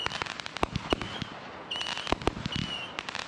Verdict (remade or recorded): recorded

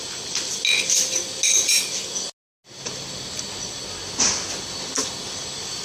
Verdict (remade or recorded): recorded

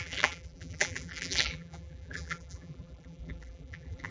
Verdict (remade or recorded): remade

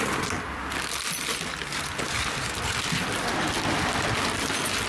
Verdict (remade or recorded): recorded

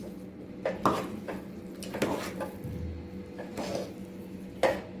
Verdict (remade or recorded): recorded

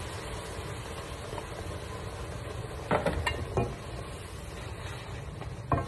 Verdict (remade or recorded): recorded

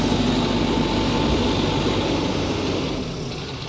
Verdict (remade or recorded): recorded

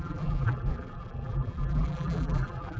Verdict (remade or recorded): remade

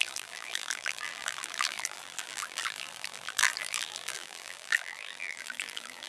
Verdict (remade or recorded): remade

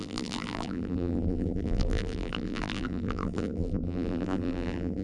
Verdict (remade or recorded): remade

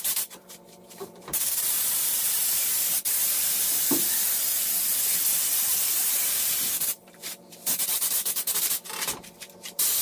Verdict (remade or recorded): remade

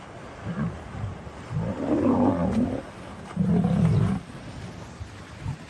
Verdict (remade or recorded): recorded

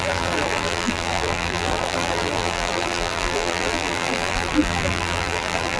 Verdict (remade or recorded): remade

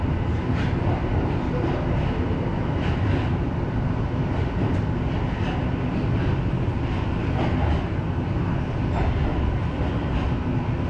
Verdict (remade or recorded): recorded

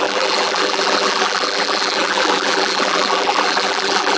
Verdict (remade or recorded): remade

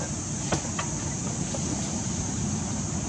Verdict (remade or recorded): remade